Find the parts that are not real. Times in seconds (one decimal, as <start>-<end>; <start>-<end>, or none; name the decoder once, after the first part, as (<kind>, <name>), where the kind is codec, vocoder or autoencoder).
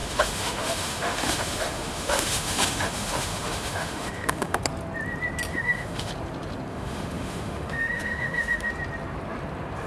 0.0-4.6 (autoencoder, DAC-VAE); 5.5-6.1; 6.7-8.7